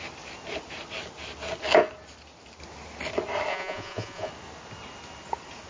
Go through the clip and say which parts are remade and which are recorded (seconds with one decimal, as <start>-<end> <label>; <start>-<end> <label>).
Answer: 0.0-3.5 recorded; 3.5-4.3 remade; 4.3-5.7 recorded